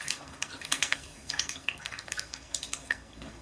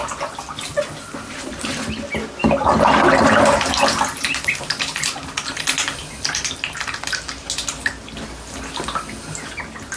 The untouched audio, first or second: second